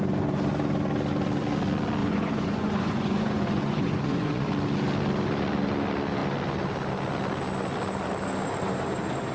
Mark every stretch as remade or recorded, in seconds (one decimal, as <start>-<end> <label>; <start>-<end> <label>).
0.0-2.0 recorded; 2.0-4.5 remade; 4.5-9.3 recorded